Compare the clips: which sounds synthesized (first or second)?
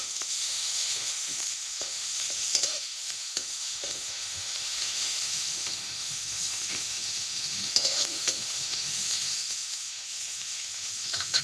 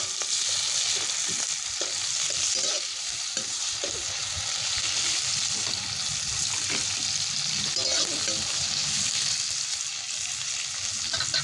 first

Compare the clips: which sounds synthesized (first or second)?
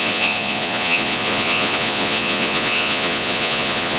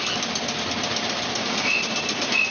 first